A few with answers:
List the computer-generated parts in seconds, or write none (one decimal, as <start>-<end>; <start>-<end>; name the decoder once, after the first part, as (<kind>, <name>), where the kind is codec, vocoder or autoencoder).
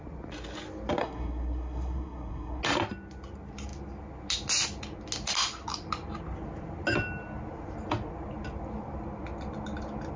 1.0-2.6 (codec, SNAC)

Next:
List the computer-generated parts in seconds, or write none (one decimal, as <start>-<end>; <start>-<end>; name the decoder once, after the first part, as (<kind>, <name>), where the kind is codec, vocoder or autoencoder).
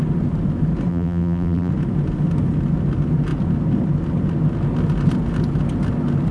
0.9-1.7 (vocoder, BigVGAN v2)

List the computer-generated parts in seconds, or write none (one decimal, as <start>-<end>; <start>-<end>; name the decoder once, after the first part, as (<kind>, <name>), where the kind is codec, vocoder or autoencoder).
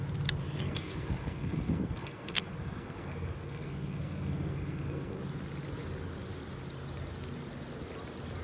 0.6-5.2 (codec, SNAC)